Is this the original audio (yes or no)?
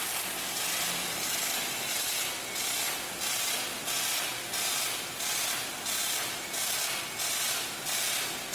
no